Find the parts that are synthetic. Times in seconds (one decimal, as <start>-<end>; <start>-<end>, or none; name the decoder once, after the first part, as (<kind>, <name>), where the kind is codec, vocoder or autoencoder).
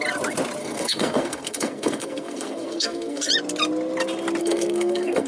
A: 0.6-3.3 (codec, SNAC); 4.4-5.3